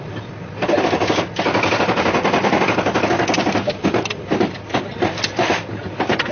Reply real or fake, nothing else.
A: real